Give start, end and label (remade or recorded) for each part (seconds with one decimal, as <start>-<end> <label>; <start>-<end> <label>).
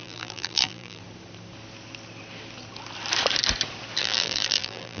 0.0-1.0 remade; 1.0-4.0 recorded; 4.0-5.0 remade